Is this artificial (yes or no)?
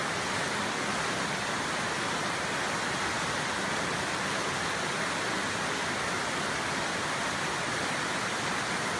no